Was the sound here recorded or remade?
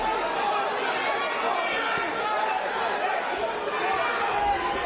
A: recorded